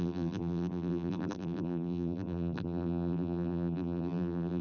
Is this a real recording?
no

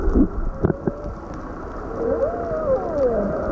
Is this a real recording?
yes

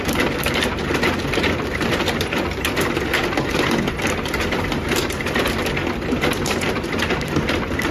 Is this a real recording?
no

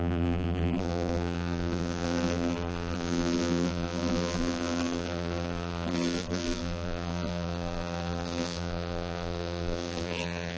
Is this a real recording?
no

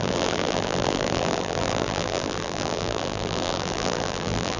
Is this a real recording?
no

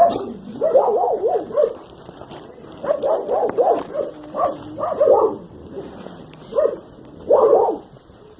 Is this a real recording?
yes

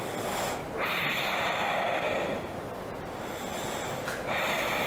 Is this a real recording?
yes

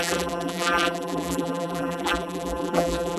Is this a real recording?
no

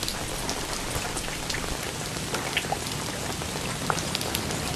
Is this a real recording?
yes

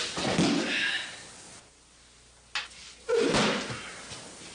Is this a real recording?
yes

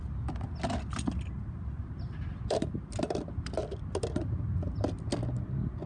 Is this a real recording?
yes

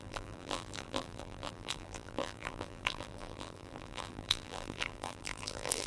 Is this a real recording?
no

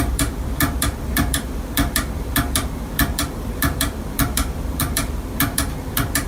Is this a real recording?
no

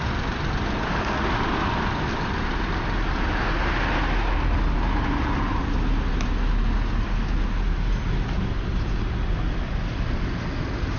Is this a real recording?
yes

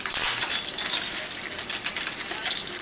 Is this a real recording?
no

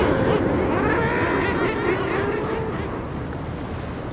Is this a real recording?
yes